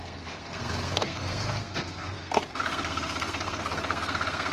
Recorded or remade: remade